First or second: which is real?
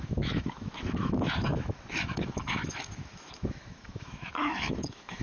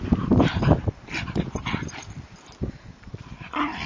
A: second